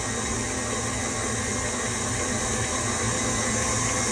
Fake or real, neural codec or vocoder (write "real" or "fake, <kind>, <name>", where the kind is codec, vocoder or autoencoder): real